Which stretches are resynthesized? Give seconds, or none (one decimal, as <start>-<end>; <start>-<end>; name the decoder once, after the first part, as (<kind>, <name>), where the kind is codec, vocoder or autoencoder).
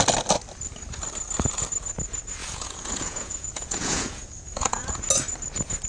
2.4-5.1 (vocoder, Vocos)